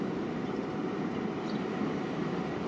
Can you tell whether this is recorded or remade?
remade